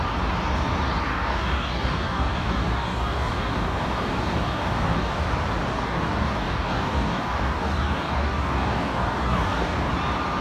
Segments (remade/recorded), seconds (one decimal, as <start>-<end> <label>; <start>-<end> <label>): 0.0-1.1 recorded; 1.1-5.2 remade; 5.2-5.7 recorded; 5.7-9.9 remade; 9.9-10.4 recorded